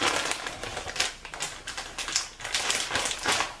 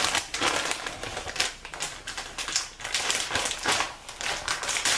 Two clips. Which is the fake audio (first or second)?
second